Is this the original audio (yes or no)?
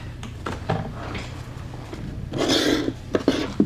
no